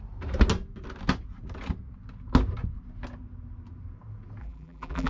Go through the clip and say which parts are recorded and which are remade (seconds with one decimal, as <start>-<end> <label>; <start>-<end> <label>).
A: 0.0-4.4 recorded; 4.4-5.1 remade

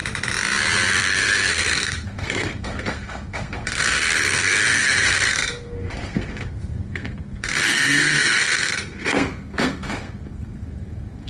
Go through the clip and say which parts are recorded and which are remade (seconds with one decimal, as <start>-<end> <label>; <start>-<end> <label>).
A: 0.0-0.9 recorded; 0.9-11.3 remade

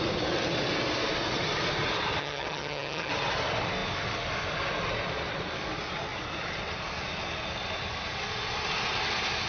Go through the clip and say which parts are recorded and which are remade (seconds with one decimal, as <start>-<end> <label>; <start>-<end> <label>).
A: 0.0-2.2 recorded; 2.2-3.1 remade; 3.1-9.5 recorded

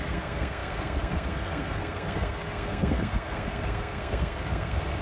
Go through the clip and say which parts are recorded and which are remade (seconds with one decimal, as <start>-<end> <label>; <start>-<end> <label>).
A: 0.0-5.0 remade

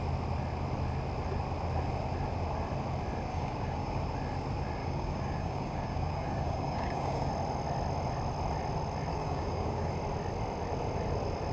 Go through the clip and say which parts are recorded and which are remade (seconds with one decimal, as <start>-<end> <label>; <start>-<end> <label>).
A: 0.0-3.3 recorded; 3.3-4.0 remade; 4.0-4.8 recorded; 4.8-7.3 remade; 7.3-9.1 recorded; 9.1-9.9 remade; 9.9-11.5 recorded

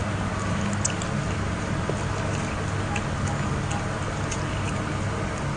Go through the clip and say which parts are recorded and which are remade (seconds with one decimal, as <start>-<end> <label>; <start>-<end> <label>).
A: 0.0-5.6 recorded

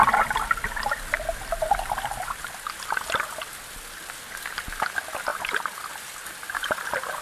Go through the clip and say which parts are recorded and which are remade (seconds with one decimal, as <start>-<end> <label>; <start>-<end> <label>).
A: 0.0-7.2 recorded

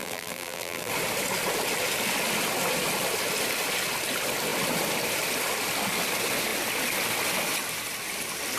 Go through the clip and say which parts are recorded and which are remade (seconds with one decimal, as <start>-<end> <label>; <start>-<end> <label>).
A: 0.0-0.9 remade; 0.9-8.6 recorded